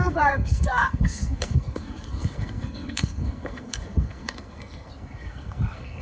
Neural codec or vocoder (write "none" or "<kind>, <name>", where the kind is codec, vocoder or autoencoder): codec, SNAC